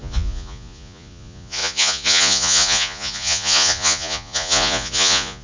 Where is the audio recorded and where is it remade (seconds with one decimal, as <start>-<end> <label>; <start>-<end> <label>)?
0.0-5.4 remade